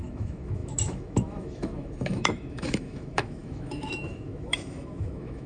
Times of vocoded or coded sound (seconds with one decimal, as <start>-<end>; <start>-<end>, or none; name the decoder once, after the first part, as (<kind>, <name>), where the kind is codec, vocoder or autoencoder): 0.0-5.5 (autoencoder, DAC-VAE)